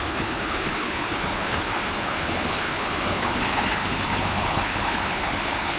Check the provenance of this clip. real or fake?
fake